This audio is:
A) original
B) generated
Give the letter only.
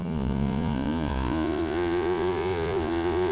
B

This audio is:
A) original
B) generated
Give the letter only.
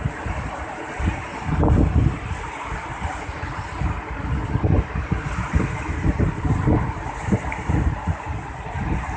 A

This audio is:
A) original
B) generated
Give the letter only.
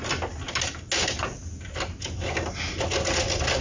A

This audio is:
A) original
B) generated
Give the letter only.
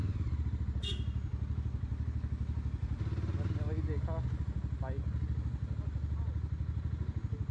A